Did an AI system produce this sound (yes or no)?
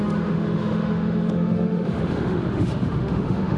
yes